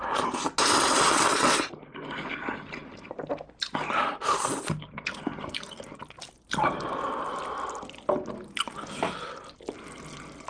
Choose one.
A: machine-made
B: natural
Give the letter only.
B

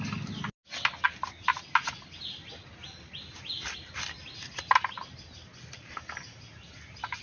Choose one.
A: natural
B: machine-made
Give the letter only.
A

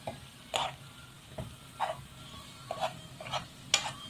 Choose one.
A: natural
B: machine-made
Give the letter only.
A